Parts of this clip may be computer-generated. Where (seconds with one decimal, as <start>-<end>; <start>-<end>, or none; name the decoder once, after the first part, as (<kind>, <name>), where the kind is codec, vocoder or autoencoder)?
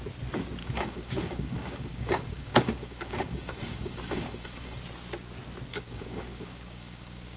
0.6-4.8 (codec, DAC); 5.7-7.4